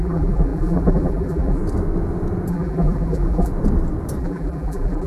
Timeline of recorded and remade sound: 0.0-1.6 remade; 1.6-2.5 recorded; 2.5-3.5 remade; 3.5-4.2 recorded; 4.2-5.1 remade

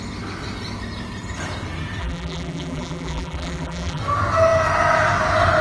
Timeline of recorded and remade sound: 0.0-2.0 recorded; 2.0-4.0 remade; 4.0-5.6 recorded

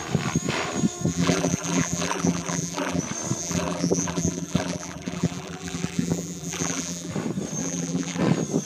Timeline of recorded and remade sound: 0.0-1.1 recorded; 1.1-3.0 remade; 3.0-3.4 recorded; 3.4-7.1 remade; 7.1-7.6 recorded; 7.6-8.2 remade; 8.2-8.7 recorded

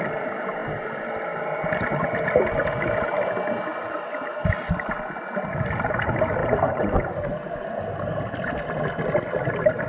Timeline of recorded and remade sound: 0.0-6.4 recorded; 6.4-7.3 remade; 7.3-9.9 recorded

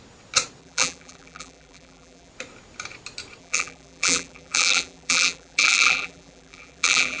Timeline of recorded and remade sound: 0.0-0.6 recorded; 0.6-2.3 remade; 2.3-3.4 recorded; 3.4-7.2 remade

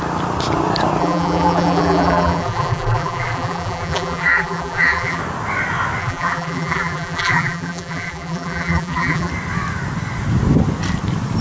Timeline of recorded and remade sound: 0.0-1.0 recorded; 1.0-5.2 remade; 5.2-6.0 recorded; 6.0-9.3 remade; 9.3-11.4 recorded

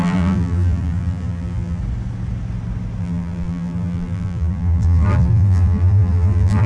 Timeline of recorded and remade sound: 0.0-1.8 remade; 1.8-3.0 recorded; 3.0-6.7 remade

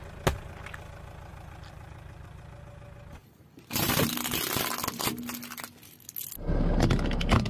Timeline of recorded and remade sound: 0.0-1.3 recorded; 1.3-2.4 remade; 2.4-3.2 recorded; 3.2-4.1 remade; 4.1-7.5 recorded